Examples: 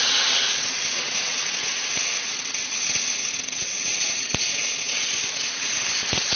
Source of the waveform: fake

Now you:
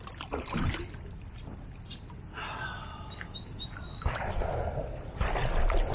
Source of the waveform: fake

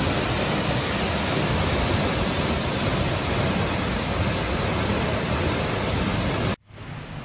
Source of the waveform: real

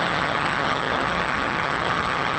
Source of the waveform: fake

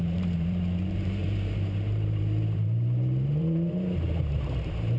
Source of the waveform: fake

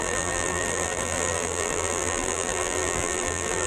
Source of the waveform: fake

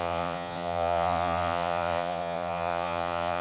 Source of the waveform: fake